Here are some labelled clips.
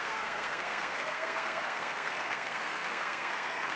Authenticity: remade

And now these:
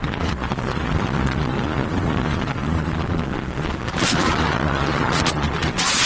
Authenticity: remade